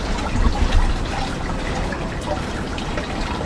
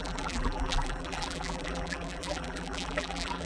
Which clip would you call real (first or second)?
first